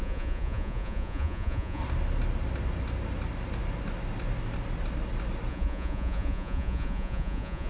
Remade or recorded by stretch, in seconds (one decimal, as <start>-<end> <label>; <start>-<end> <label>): 0.0-1.8 remade; 1.8-5.5 recorded; 5.5-7.7 remade